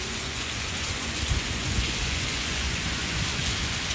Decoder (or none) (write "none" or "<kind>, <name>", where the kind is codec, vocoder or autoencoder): vocoder, Vocos